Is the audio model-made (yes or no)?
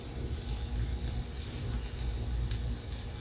no